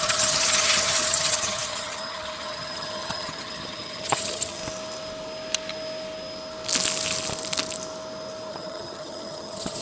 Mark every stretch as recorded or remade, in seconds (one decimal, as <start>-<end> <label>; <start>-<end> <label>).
0.0-4.6 remade; 4.6-8.5 recorded; 8.5-9.8 remade